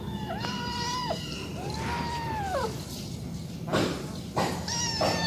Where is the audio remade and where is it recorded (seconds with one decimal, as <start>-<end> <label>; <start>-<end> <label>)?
0.0-5.3 recorded